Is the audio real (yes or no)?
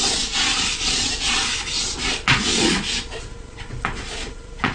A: no